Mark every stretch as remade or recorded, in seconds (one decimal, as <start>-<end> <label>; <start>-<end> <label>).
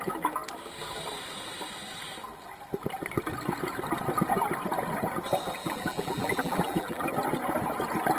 0.0-5.6 recorded; 5.6-7.1 remade; 7.1-8.2 recorded